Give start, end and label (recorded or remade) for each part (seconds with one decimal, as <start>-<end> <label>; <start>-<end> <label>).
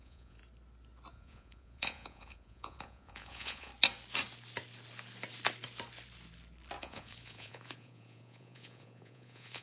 0.0-0.4 remade; 0.4-1.1 recorded; 1.1-3.7 remade; 3.7-6.8 recorded; 6.8-9.6 remade